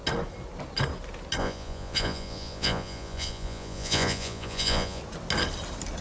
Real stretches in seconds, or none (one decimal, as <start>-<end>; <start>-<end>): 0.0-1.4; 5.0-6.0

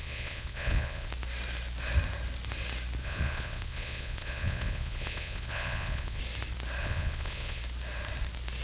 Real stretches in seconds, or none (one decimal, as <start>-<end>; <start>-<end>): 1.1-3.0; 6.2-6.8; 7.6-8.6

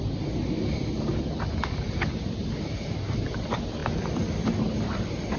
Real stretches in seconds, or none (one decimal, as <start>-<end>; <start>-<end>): 0.0-5.4